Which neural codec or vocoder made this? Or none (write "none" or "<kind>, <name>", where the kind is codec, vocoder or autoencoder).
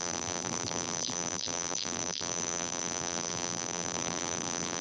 vocoder, BigVGAN v2